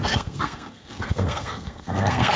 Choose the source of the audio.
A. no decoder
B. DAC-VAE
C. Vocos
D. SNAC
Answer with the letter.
D